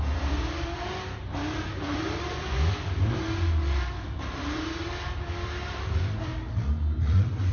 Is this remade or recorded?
remade